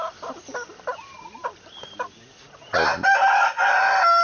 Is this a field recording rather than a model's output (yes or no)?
yes